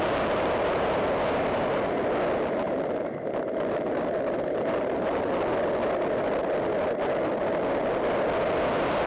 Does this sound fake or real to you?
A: real